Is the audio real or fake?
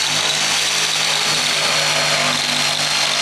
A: real